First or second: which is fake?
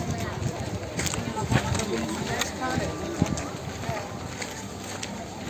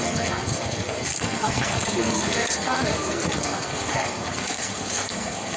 second